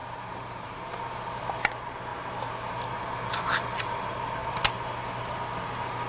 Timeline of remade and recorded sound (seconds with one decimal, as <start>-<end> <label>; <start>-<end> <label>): 0.0-0.9 remade; 0.9-2.1 recorded; 2.1-2.7 remade; 2.7-6.1 recorded